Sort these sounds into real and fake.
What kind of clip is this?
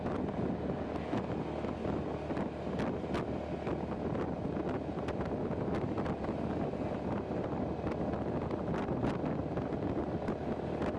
real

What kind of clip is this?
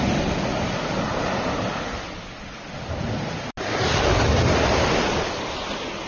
real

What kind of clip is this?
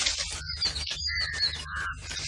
real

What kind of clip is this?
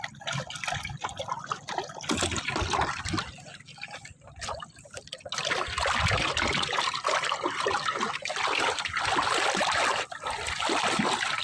real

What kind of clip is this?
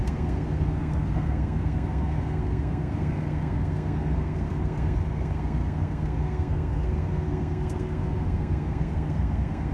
fake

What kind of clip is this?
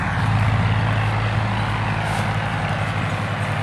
real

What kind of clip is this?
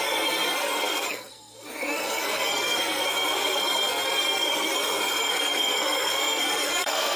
fake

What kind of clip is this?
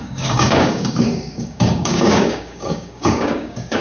fake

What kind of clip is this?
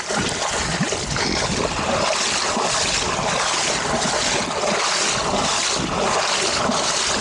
real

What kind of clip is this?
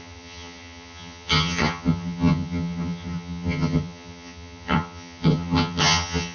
fake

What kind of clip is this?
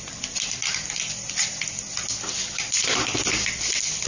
fake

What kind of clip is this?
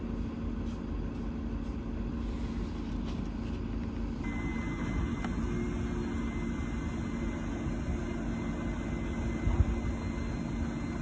real